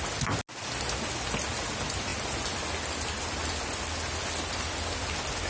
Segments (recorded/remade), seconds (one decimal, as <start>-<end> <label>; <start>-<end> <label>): 0.0-5.5 recorded